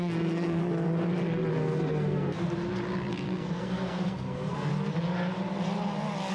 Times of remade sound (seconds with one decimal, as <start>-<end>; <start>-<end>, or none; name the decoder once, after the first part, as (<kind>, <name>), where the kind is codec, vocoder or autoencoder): 0.0-0.6 (codec, SNAC); 1.5-2.4; 3.1-4.7